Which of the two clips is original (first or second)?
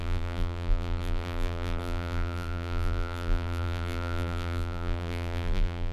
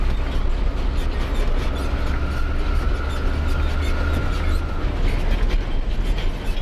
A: second